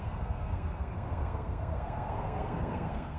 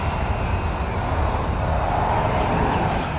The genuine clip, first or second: second